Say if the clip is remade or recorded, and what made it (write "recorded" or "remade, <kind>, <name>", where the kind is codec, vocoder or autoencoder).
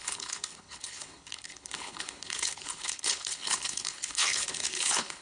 remade, codec, HILCodec